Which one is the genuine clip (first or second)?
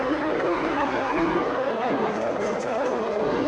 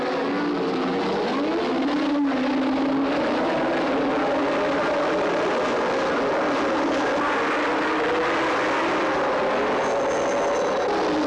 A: second